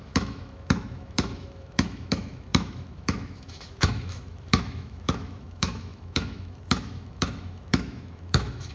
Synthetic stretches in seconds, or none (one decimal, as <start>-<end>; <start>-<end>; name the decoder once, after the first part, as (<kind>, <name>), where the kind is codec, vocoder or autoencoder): 0.0-8.7 (autoencoder, DAC-VAE)